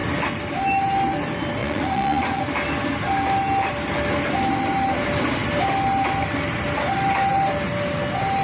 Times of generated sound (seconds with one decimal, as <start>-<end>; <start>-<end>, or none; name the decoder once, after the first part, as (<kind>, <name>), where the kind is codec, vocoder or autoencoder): 1.6-2.4 (vocoder, Vocos)